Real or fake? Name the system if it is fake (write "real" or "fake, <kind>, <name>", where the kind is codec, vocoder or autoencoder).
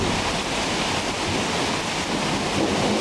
real